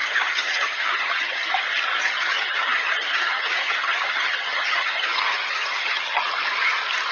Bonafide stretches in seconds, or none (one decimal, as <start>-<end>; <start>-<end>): 1.5-1.9; 6.2-7.1